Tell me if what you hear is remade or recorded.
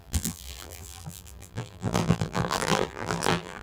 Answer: remade